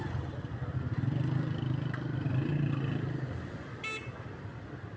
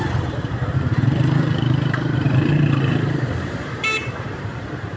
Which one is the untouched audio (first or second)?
first